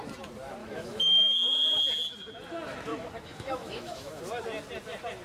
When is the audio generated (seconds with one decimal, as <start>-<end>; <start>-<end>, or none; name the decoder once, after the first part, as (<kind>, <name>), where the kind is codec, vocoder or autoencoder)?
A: 0.6-1.8 (autoencoder, DAC-VAE); 2.9-4.2